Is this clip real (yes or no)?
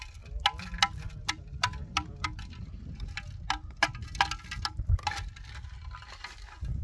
yes